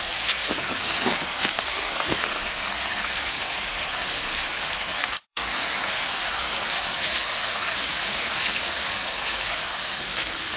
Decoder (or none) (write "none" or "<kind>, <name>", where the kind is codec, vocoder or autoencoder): codec, SNAC